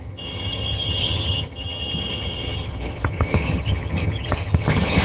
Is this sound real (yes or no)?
no